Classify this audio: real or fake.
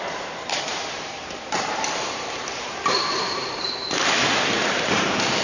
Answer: fake